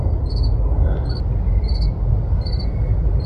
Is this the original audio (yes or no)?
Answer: yes